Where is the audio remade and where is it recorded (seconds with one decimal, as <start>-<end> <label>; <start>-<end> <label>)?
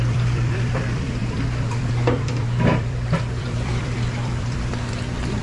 0.0-5.4 remade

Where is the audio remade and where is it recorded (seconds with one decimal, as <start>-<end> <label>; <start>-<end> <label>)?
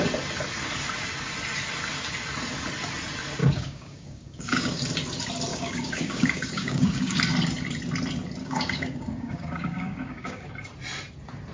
0.0-3.4 recorded; 3.4-4.8 remade; 4.8-5.5 recorded; 5.5-7.2 remade; 7.2-8.4 recorded; 8.4-10.5 remade; 10.5-11.5 recorded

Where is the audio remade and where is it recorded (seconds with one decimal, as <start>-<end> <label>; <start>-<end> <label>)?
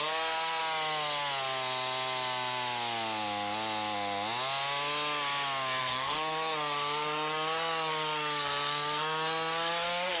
0.0-0.6 remade; 0.6-5.8 recorded; 5.8-10.2 remade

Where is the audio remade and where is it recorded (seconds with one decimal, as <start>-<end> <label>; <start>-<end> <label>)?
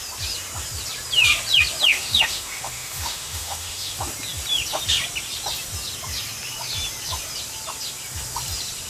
0.0-1.9 recorded; 1.9-3.9 remade; 3.9-8.9 recorded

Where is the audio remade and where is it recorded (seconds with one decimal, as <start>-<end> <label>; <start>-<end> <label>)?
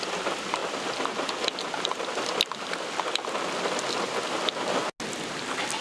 0.0-5.8 recorded